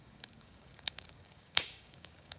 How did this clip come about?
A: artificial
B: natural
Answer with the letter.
A